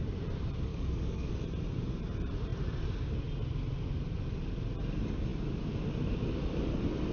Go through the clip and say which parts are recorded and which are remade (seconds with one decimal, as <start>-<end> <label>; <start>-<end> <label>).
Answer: 0.0-0.7 recorded; 0.7-1.3 remade; 1.3-7.1 recorded